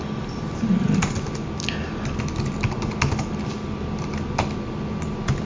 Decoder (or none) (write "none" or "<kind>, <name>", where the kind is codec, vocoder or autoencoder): none